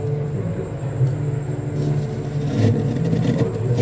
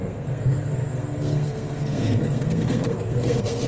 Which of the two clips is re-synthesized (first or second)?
second